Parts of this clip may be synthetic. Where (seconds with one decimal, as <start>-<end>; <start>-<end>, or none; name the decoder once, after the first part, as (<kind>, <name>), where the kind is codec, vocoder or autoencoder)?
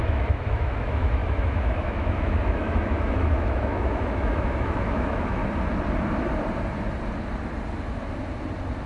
0.0-5.4 (autoencoder, DAC-VAE)